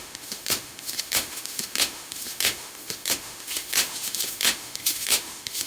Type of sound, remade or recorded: remade